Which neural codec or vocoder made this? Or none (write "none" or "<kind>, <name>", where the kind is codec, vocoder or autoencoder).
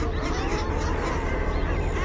none